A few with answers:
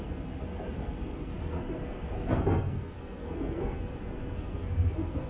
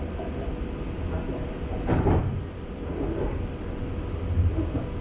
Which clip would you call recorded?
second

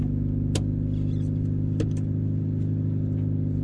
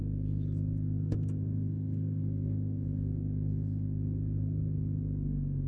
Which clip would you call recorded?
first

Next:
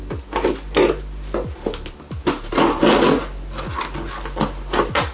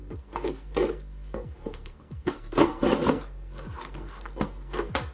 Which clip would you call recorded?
first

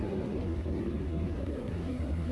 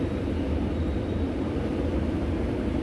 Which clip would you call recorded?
second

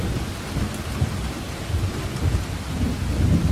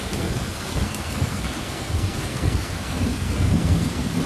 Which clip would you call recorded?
first